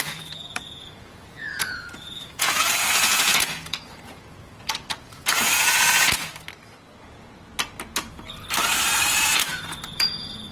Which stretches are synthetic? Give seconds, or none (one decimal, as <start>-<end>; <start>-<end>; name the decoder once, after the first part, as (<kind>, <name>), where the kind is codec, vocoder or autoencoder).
0.0-6.3 (vocoder, Vocos); 9.5-10.5